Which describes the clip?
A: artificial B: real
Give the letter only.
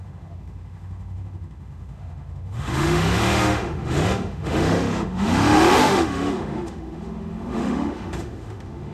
A